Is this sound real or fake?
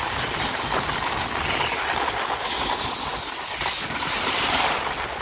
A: real